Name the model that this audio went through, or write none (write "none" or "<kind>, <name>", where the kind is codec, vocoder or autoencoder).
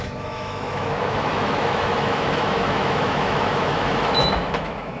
autoencoder, DAC-VAE